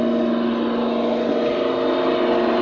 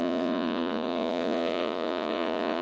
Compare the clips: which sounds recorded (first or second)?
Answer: first